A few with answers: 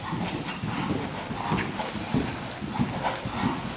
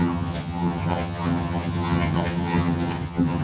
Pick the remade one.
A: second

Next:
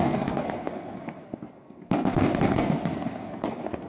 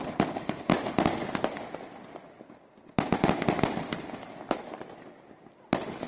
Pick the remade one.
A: first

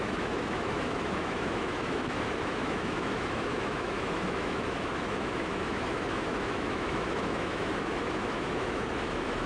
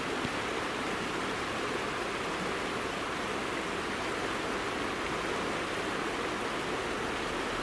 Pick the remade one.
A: first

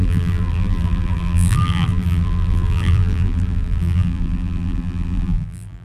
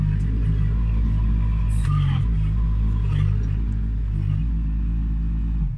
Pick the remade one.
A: first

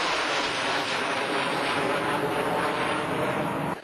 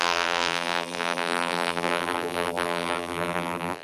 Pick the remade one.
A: second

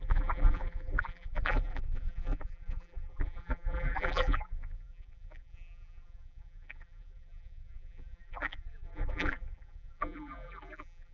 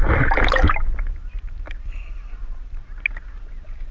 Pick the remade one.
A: first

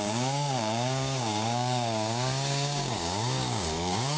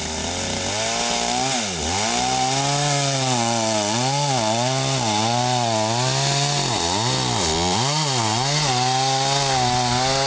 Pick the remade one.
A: first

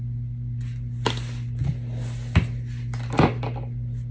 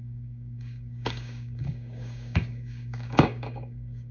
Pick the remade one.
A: second